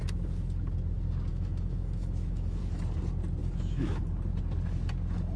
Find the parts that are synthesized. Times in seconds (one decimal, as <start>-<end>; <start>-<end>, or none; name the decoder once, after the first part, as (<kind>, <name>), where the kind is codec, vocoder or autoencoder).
1.3-2.6 (autoencoder, DAC-VAE); 3.4-4.0